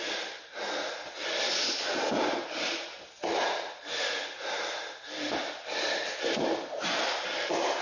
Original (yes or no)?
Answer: yes